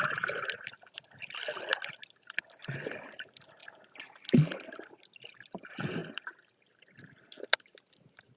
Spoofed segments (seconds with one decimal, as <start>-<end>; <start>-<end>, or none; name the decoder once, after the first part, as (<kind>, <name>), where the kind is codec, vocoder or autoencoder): none

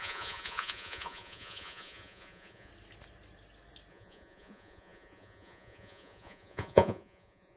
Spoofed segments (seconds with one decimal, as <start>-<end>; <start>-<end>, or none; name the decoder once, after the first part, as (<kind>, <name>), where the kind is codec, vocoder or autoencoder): 0.0-2.7 (vocoder, Vocos); 3.9-7.6

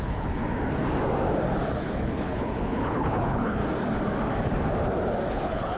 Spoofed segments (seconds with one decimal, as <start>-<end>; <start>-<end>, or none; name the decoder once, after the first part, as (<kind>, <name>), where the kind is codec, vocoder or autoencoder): 0.0-0.4 (codec, HILCodec); 1.8-3.6; 5.3-5.8

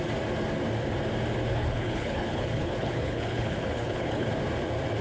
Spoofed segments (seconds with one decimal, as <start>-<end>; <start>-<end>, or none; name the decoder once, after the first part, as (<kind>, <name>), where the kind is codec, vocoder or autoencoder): 1.5-4.3 (codec, HILCodec)

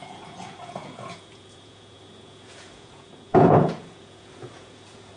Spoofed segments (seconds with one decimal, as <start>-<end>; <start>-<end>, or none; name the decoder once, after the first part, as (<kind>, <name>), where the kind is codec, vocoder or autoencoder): 0.0-5.2 (vocoder, Vocos)